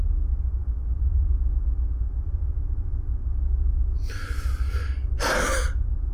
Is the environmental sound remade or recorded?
recorded